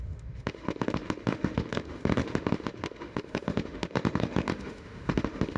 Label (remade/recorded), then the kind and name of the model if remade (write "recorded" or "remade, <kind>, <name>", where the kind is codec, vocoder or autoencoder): remade, autoencoder, DAC-VAE